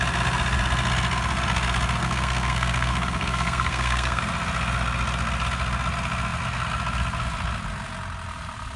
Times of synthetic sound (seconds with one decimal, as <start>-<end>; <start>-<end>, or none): 2.0-4.2